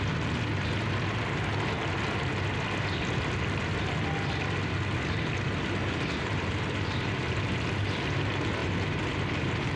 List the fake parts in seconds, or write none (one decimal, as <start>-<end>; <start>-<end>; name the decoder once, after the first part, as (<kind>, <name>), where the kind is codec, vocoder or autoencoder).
5.8-6.8 (vocoder, BigVGAN v2); 8.6-9.8